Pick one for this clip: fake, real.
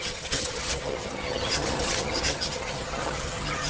fake